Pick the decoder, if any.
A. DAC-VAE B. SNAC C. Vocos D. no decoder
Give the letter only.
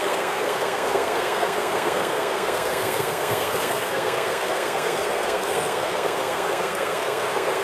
B